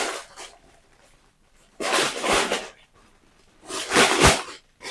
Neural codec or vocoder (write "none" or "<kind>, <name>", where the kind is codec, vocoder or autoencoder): vocoder, BigVGAN v2